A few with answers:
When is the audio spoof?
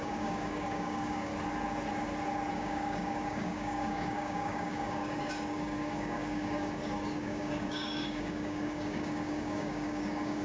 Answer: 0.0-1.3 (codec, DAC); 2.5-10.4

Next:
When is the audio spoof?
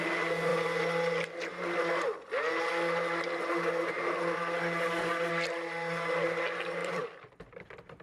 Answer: 6.8-7.3 (vocoder, BigVGAN v2)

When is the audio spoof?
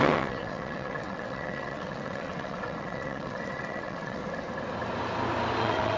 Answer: 0.0-4.2 (vocoder, WaveNeXt); 5.6-6.0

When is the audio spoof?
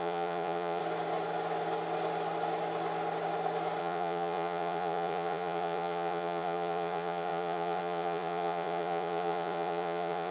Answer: 0.0-0.8 (vocoder, Vocos); 3.8-10.3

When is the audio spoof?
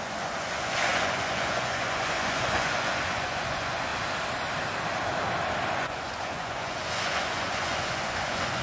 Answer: 0.0-3.9 (vocoder, Vocos); 5.7-8.6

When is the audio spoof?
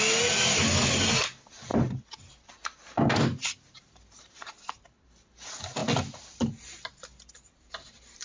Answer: none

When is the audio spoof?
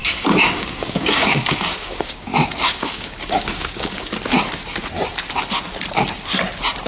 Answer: 0.0-4.1 (codec, DAC)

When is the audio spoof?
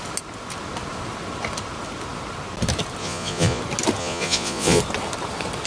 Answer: 3.0-3.6 (vocoder, Vocos); 4.0-4.8